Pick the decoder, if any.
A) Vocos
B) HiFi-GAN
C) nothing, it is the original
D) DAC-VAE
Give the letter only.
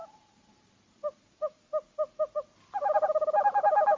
C